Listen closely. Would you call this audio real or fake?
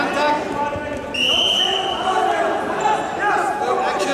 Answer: real